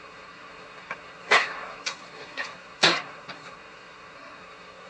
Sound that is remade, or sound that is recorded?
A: remade